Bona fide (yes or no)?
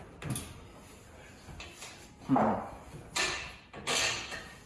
yes